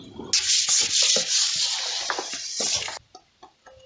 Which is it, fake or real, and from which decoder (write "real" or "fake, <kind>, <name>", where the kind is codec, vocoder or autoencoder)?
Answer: real